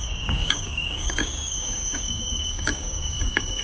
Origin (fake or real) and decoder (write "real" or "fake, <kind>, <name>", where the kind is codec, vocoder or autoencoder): fake, codec, DAC